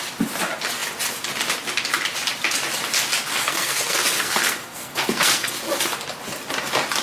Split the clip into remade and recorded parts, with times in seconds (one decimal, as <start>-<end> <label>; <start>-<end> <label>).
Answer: 0.0-3.3 recorded; 3.3-5.5 remade; 5.5-7.0 recorded